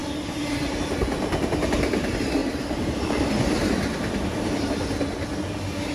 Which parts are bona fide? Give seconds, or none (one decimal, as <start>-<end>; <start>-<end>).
0.0-2.4; 3.7-5.9